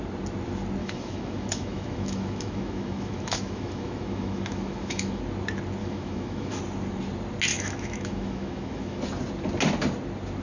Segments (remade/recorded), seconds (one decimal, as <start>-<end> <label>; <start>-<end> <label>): 0.0-0.8 recorded; 0.8-5.2 remade; 5.2-5.8 recorded; 5.8-6.6 remade; 6.6-7.5 recorded; 7.5-9.0 remade; 9.0-10.4 recorded